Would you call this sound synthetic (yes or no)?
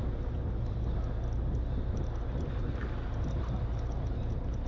no